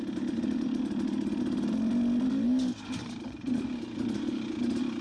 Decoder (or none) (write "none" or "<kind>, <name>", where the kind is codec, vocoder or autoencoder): none